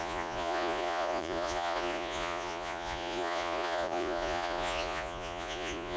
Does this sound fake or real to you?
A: fake